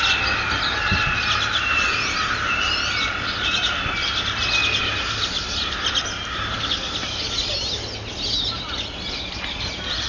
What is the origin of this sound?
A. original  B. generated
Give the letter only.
A